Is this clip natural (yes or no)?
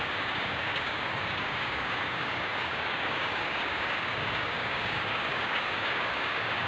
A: no